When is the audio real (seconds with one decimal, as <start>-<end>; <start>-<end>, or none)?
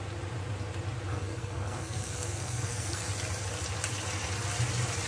0.0-1.1; 3.1-5.1